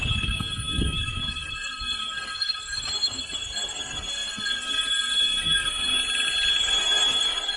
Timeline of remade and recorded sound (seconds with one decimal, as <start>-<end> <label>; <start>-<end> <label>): 0.0-6.0 remade; 6.0-6.6 recorded; 6.6-7.6 remade